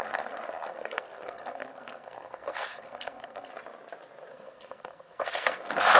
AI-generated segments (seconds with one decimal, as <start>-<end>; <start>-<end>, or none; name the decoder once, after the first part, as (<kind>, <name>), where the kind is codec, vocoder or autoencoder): 0.0-3.5 (codec, SNAC); 4.3-6.0